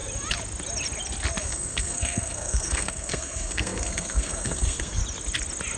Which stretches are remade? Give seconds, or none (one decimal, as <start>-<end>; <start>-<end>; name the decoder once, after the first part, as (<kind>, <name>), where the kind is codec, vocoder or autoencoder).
1.4-5.0 (codec, SNAC)